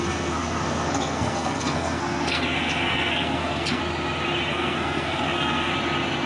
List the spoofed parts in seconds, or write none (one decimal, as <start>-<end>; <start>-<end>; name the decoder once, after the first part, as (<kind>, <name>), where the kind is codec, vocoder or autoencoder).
0.0-3.8 (codec, SNAC); 4.5-5.7